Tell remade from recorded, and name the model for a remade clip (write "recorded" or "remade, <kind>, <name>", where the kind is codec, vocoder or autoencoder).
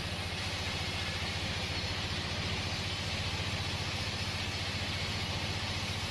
remade, vocoder, BigVGAN v2